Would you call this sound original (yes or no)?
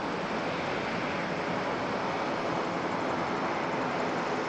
yes